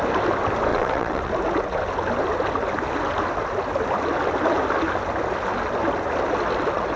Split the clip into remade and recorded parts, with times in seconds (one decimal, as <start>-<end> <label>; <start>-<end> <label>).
0.0-0.7 recorded; 0.7-1.3 remade; 1.3-7.0 recorded